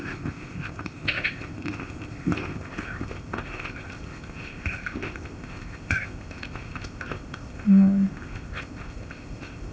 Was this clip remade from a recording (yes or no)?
yes